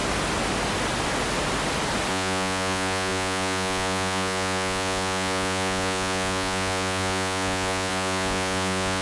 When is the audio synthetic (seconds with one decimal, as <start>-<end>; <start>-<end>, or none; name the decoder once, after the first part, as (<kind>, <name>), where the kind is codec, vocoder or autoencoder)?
2.1-9.0 (vocoder, Vocos)